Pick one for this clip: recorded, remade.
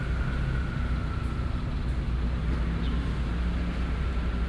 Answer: recorded